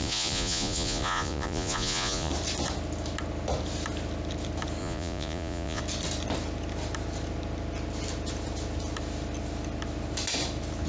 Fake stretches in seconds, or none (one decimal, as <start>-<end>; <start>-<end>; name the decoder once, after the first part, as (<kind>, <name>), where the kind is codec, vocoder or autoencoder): 0.0-2.3 (vocoder, Vocos); 4.8-5.8